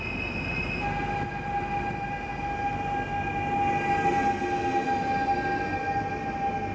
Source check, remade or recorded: recorded